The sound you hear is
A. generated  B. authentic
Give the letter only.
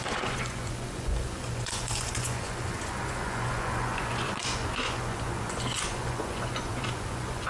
A